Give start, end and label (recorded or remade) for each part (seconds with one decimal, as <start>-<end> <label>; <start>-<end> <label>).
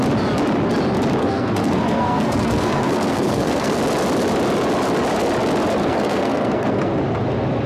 0.0-1.2 recorded; 1.2-3.8 remade; 3.8-5.8 recorded; 5.8-6.9 remade; 6.9-7.7 recorded